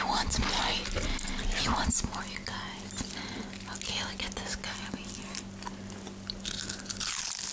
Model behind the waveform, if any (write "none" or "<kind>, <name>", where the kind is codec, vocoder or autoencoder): none